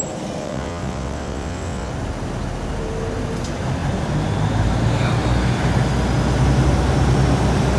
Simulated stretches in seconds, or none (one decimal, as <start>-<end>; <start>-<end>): 0.4-1.9